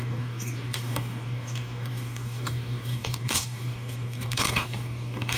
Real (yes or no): no